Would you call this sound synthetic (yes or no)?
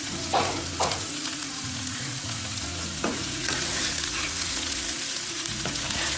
yes